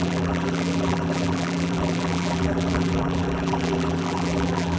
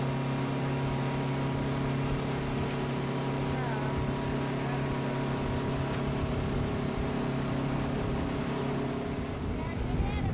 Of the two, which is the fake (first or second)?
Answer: first